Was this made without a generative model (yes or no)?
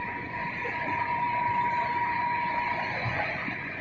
no